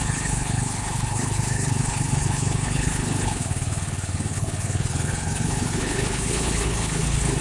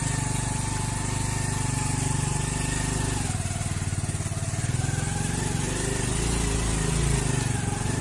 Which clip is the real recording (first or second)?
second